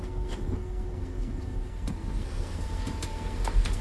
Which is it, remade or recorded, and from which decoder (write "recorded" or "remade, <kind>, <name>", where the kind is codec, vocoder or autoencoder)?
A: remade, codec, SNAC